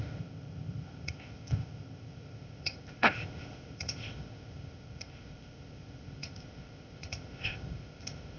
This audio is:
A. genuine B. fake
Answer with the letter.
B